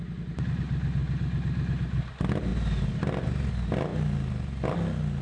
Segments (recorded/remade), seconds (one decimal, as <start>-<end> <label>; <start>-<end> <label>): 0.0-5.2 recorded